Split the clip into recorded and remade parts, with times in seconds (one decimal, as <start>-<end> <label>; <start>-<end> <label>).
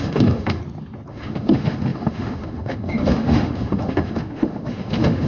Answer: 0.0-0.6 remade; 0.6-1.1 recorded; 1.1-5.3 remade